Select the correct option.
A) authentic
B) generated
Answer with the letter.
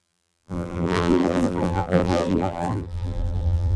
B